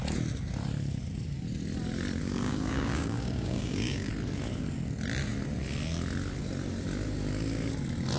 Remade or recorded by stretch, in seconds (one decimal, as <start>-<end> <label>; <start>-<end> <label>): 0.0-2.2 recorded; 2.2-4.1 remade; 4.1-8.2 recorded